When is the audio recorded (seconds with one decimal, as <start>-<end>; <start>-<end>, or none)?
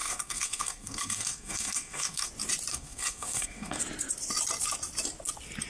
2.3-2.7; 3.8-5.7